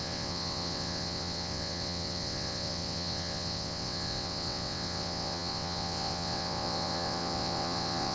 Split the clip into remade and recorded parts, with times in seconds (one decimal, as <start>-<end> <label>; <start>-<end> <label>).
0.0-8.1 remade